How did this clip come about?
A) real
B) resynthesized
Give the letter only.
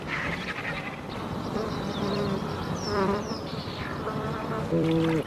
B